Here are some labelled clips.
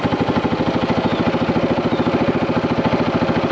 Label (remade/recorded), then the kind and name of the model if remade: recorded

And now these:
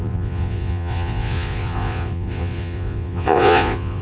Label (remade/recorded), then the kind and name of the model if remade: remade, vocoder, Vocos